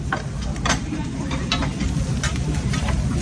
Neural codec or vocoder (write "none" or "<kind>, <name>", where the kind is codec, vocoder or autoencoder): vocoder, BigVGAN v2